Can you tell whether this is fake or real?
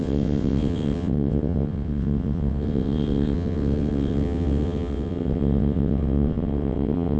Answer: fake